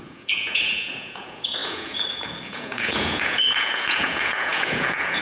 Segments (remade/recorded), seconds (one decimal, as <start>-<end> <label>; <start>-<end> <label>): 0.0-5.2 remade

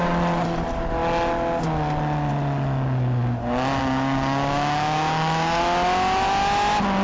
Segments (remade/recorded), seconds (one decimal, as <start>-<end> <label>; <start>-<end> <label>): 0.0-3.8 recorded; 3.8-5.6 remade; 5.6-7.0 recorded

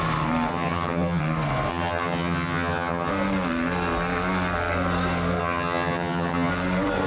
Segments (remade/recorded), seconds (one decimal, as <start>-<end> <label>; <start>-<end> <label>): 0.0-0.5 recorded; 0.5-1.2 remade; 1.2-1.7 recorded; 1.7-3.1 remade; 3.1-5.4 recorded; 5.4-6.5 remade; 6.5-7.1 recorded

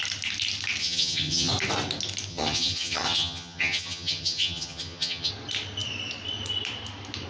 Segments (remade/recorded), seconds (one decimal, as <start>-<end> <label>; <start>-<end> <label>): 0.0-0.8 recorded; 0.8-1.5 remade; 1.5-2.3 recorded; 2.3-5.3 remade; 5.3-7.3 recorded

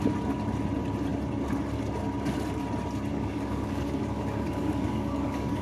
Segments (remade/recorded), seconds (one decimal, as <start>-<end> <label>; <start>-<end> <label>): 0.0-3.1 recorded; 3.1-5.6 remade

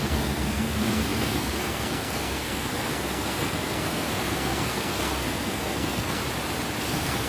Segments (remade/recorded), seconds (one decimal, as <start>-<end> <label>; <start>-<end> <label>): 0.0-6.2 remade; 6.2-6.8 recorded; 6.8-7.3 remade

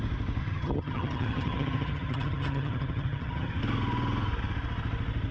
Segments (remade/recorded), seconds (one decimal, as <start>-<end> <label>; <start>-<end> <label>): 0.0-0.4 recorded; 0.4-3.6 remade; 3.6-5.3 recorded